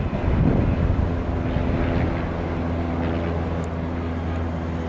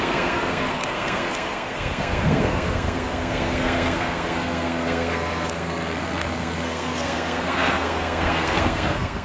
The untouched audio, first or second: first